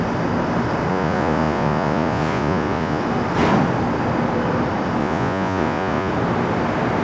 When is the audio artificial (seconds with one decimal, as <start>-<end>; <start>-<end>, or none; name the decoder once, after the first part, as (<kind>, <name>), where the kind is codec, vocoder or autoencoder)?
0.9-3.0 (vocoder, Vocos); 5.0-6.1